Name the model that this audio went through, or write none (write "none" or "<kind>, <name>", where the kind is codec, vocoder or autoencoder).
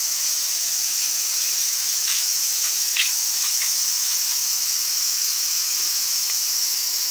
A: autoencoder, DAC-VAE